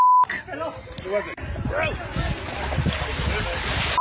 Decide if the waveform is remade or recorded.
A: recorded